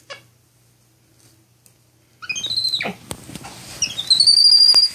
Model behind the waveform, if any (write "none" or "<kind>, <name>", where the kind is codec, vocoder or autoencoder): none